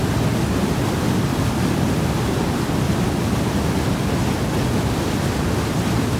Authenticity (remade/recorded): recorded